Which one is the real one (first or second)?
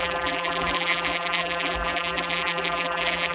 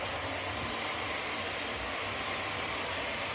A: second